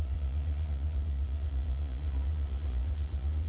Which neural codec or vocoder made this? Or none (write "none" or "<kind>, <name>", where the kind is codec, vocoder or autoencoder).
vocoder, Vocos